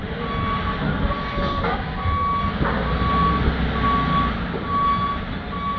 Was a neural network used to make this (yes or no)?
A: no